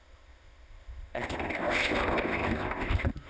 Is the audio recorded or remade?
remade